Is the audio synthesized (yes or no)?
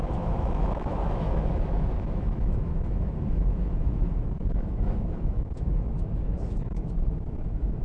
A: yes